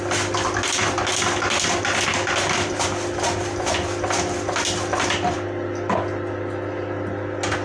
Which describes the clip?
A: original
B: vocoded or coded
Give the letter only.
A